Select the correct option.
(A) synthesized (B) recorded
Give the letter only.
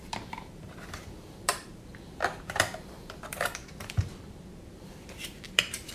A